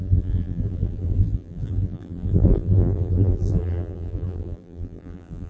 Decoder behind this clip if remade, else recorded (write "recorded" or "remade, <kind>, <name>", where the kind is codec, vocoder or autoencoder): remade, vocoder, BigVGAN v2